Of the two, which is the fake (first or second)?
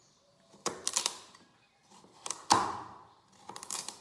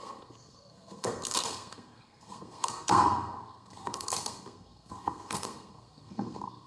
second